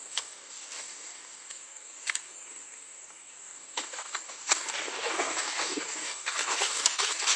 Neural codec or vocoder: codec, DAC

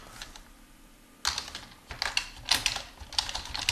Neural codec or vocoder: none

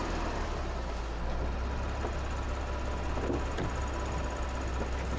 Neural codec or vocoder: none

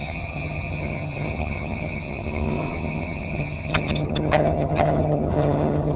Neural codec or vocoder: vocoder, HiFi-GAN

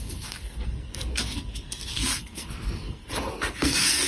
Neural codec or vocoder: codec, SNAC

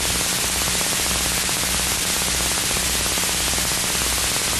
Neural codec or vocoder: none